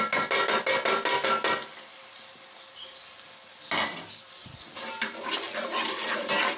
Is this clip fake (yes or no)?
no